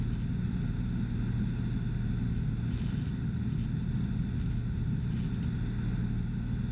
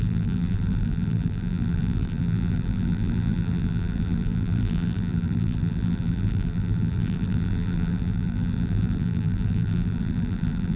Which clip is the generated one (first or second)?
second